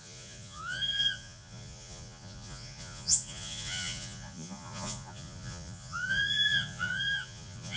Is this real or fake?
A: fake